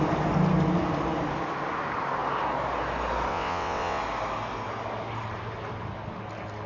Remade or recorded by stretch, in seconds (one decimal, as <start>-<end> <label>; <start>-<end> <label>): 0.0-3.3 recorded; 3.3-4.0 remade; 4.0-6.7 recorded